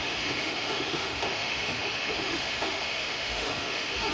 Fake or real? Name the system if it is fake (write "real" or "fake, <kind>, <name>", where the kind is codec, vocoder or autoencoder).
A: fake, autoencoder, DAC-VAE